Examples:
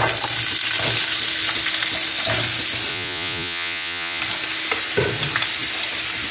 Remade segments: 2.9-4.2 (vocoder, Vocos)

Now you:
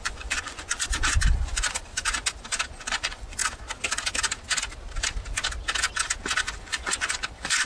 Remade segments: 0.0-1.9 (vocoder, Vocos); 2.7-3.4; 6.4-7.7

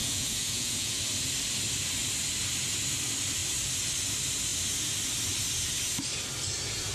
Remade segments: 0.0-1.0 (vocoder, Vocos)

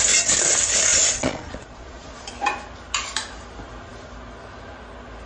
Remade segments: 0.9-2.3 (vocoder, Vocos)

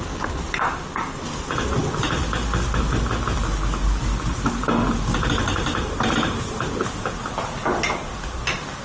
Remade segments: none

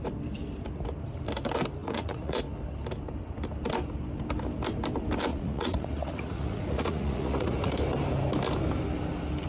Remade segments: 1.8-2.4 (vocoder, Vocos); 5.3-7.7

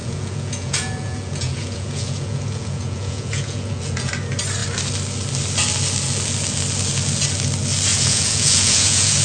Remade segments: 0.0-4.1 (vocoder, Vocos); 7.9-9.2